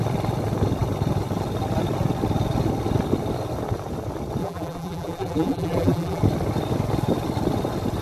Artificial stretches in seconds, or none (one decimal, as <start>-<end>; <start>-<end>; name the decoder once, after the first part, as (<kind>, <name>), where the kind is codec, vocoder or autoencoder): 4.4-6.2 (vocoder, BigVGAN v2)